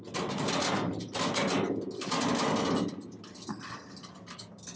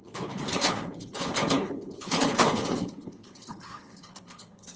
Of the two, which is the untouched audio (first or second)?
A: first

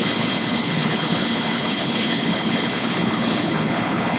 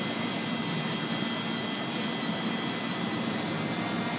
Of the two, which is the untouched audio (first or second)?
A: second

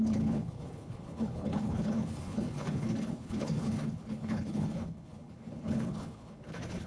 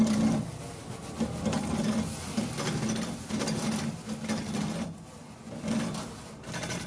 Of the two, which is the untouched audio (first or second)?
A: second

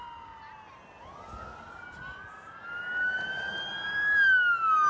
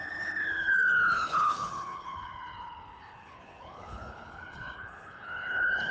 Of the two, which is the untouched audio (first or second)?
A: first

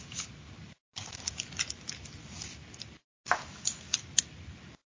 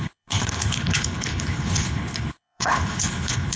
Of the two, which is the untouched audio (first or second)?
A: first